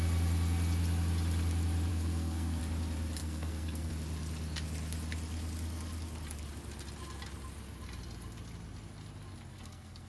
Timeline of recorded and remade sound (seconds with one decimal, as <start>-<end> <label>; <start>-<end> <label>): 0.0-1.9 recorded; 1.9-2.6 remade; 2.6-3.2 recorded; 3.2-3.9 remade; 3.9-9.5 recorded; 9.5-10.1 remade